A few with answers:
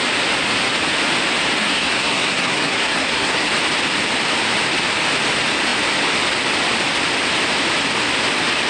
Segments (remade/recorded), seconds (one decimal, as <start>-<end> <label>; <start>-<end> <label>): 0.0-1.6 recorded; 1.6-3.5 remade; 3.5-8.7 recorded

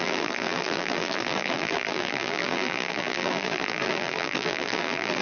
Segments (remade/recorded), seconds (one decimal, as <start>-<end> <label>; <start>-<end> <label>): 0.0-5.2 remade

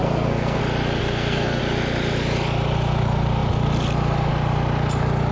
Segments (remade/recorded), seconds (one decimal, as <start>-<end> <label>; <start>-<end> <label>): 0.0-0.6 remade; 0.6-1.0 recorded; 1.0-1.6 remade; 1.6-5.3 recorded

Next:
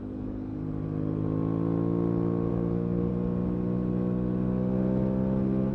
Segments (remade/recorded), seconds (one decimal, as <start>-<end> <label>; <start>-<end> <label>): 0.0-0.5 remade; 0.5-2.5 recorded; 2.5-3.1 remade; 3.1-5.7 recorded

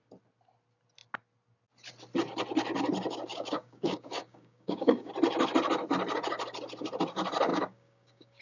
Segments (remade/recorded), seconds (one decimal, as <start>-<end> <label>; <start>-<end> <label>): 0.0-3.3 recorded; 3.3-5.1 remade; 5.1-7.5 recorded; 7.5-8.4 remade

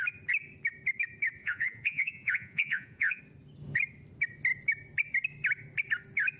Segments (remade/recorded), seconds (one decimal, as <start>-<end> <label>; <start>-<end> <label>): 0.0-1.4 recorded; 1.4-3.2 remade; 3.2-6.4 recorded

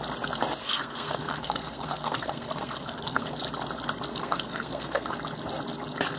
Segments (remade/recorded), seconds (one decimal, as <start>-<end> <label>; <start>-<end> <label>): 0.0-0.6 recorded; 0.6-3.4 remade; 3.4-4.1 recorded; 4.1-5.1 remade; 5.1-6.2 recorded

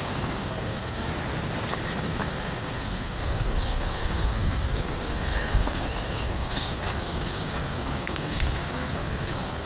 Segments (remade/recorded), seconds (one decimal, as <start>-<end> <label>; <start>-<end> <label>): 0.0-1.1 remade; 1.1-2.0 recorded; 2.0-9.7 remade